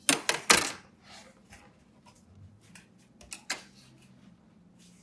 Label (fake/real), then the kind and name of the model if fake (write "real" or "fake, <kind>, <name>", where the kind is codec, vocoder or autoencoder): real